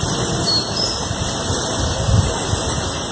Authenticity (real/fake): real